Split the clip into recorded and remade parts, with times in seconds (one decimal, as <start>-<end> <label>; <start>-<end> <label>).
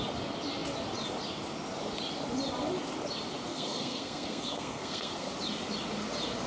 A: 0.0-3.5 recorded; 3.5-5.3 remade; 5.3-6.5 recorded